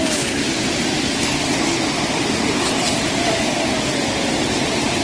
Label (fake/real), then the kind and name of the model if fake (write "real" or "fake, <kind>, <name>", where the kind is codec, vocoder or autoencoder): real